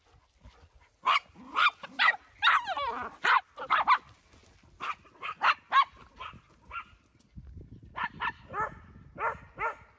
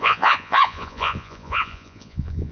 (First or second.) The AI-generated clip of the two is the second